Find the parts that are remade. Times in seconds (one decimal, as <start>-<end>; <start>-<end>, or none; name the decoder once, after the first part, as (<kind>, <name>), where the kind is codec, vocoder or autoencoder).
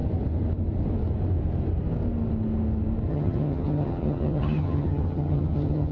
3.1-5.9 (vocoder, HiFi-GAN)